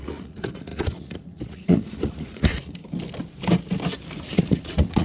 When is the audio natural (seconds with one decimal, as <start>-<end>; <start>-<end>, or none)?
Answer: 2.8-4.2